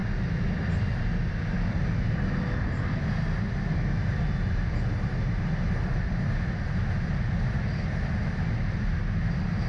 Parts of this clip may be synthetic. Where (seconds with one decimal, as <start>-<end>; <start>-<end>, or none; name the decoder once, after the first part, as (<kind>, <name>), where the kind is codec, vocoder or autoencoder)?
none